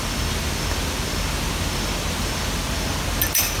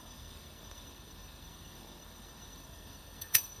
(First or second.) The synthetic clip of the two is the second